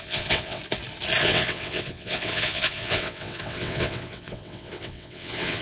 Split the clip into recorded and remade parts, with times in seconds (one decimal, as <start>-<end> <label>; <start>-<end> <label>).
0.0-0.6 remade; 0.6-1.2 recorded; 1.2-5.6 remade